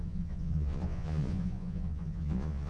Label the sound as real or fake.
fake